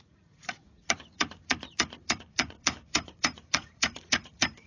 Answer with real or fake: fake